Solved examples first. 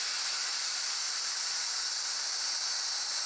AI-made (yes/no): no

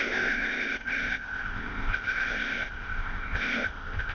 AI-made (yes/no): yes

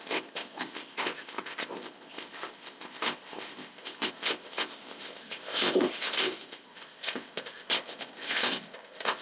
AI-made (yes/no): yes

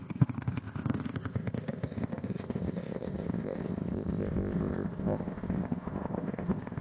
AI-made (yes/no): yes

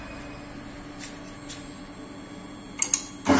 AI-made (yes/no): no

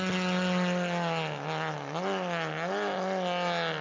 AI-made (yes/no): no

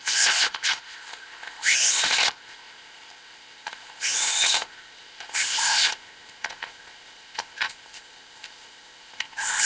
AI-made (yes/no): yes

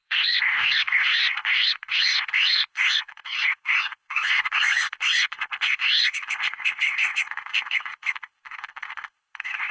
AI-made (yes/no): yes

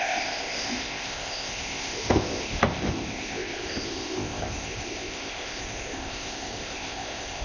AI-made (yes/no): yes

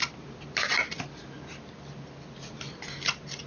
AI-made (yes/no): no